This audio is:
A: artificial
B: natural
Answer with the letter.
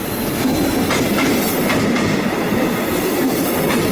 B